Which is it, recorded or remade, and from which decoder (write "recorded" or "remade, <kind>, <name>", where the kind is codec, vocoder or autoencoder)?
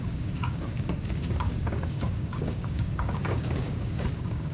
remade, codec, DAC